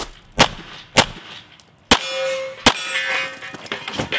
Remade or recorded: recorded